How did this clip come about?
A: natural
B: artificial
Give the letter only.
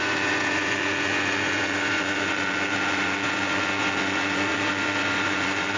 B